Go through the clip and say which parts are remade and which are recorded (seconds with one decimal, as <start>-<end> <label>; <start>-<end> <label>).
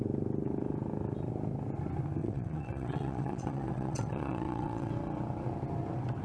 0.0-2.2 recorded; 2.2-4.9 remade; 4.9-6.2 recorded